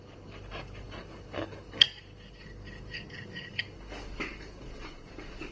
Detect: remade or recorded remade